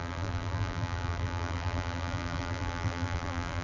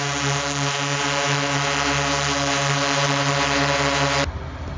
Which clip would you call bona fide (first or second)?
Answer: second